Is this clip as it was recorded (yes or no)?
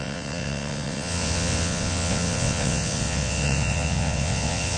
no